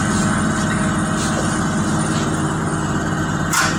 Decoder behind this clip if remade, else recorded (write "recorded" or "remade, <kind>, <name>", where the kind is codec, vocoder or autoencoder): recorded